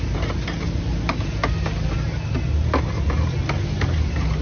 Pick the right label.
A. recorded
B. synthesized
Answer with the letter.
A